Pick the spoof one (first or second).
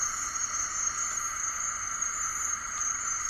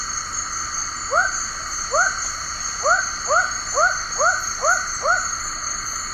first